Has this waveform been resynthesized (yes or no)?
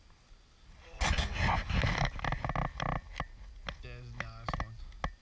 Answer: no